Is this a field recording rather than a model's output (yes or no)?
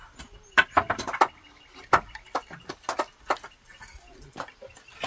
yes